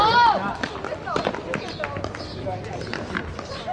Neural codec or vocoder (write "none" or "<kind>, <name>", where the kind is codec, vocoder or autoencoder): none